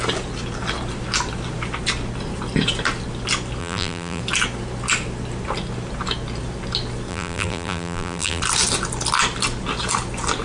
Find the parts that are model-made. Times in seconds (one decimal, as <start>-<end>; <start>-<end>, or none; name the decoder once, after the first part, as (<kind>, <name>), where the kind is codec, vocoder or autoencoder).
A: 3.6-4.2 (vocoder, BigVGAN v2); 7.1-8.4